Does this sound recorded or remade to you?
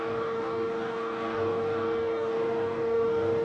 remade